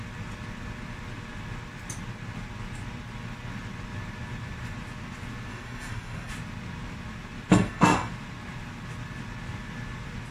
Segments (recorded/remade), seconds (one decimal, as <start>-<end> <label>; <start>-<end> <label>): 0.0-5.5 recorded; 5.5-6.3 remade; 6.3-7.5 recorded; 7.5-8.1 remade; 8.1-10.3 recorded